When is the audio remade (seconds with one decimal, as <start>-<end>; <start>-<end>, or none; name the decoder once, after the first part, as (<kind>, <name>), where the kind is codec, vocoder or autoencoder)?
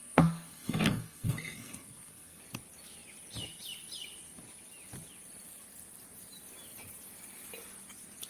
0.0-2.4 (codec, SNAC)